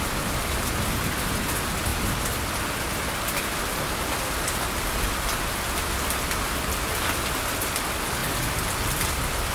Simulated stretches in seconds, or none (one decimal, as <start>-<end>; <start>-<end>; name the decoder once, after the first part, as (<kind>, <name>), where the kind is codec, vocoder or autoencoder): none